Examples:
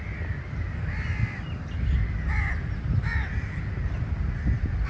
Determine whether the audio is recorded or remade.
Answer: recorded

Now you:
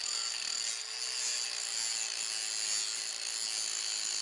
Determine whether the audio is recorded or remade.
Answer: recorded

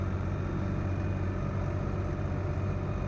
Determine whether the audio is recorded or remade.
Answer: recorded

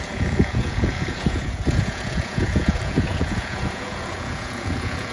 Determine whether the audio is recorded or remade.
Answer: remade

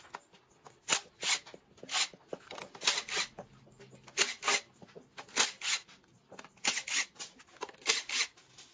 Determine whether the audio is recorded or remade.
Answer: recorded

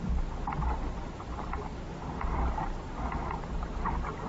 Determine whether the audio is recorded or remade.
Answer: recorded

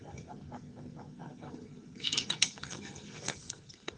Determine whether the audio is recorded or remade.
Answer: remade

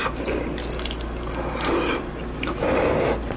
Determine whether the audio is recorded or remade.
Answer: recorded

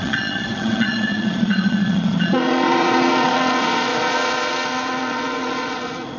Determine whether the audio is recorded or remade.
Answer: remade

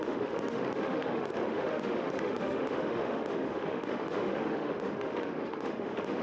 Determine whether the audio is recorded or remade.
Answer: remade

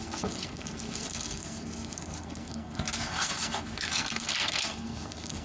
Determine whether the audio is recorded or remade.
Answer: remade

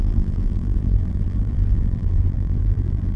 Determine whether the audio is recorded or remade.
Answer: remade